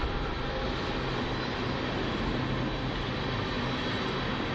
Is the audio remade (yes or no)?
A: no